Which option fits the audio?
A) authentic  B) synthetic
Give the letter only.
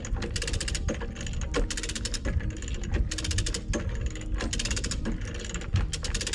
A